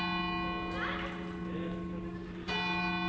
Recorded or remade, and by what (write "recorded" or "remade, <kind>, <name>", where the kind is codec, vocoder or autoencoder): recorded